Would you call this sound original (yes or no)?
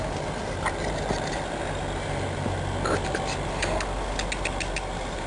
yes